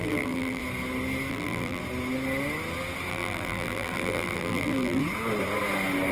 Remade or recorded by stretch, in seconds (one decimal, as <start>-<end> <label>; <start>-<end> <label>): 0.0-0.6 remade; 0.6-1.3 recorded; 1.3-1.8 remade; 1.8-3.1 recorded; 3.1-5.0 remade; 5.0-6.1 recorded

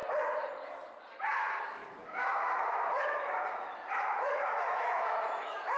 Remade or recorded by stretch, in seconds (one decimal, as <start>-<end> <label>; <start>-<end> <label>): 0.0-1.6 recorded; 1.6-5.8 remade

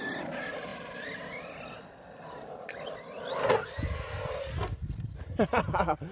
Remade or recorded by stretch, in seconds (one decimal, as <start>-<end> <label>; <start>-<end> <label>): 0.0-6.1 recorded

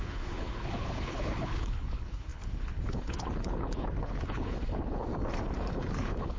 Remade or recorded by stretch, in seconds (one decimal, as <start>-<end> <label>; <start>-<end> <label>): 0.0-5.1 remade; 5.1-5.7 recorded; 5.7-6.4 remade

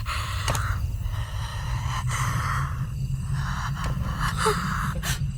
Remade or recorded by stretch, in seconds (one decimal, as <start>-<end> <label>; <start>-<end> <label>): 0.0-5.4 remade

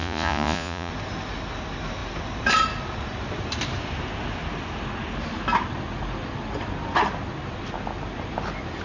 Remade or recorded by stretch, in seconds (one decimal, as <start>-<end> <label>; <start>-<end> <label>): 0.0-0.9 remade; 0.9-8.8 recorded

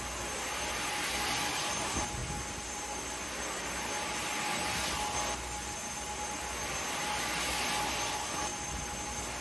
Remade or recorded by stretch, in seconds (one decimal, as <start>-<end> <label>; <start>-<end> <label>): 0.0-9.4 recorded

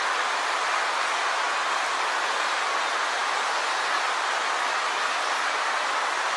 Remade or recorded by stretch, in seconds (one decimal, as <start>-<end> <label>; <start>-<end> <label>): 0.0-6.4 recorded